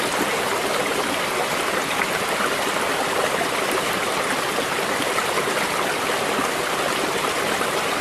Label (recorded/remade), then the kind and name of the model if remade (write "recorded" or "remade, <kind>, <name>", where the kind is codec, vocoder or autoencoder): recorded